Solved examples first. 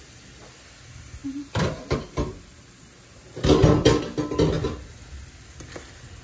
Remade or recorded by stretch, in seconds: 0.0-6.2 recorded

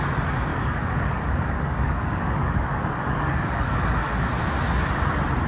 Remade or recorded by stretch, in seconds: 0.0-0.5 recorded; 0.5-3.8 remade; 3.8-5.5 recorded

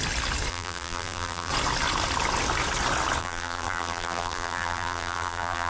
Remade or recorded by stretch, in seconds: 0.0-0.5 recorded; 0.5-1.5 remade; 1.5-3.2 recorded; 3.2-5.7 remade

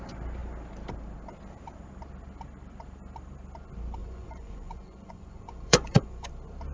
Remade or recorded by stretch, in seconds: 0.0-4.0 recorded; 4.0-6.3 remade; 6.3-6.7 recorded

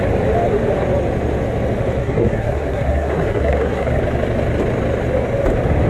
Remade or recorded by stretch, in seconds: 0.0-2.0 recorded; 2.0-4.0 remade; 4.0-5.9 recorded

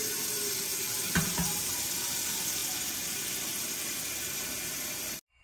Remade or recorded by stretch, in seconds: 0.0-0.7 recorded; 0.7-1.7 remade; 1.7-5.4 recorded